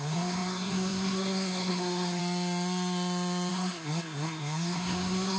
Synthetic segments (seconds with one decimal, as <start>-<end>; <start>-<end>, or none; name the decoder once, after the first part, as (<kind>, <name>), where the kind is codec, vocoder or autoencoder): 0.0-2.2 (codec, SNAC); 3.5-5.4